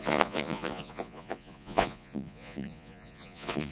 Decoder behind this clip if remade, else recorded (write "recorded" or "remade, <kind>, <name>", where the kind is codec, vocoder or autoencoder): remade, vocoder, Vocos